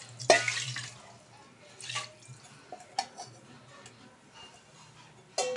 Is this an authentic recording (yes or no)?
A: yes